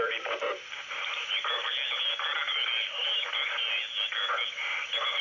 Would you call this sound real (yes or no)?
no